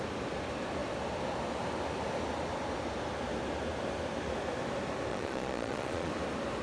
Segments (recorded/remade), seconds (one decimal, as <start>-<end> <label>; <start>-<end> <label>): 0.0-5.1 recorded; 5.1-6.1 remade; 6.1-6.6 recorded